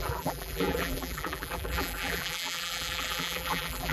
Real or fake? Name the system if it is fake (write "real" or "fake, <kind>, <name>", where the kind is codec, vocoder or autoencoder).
fake, vocoder, BigVGAN v2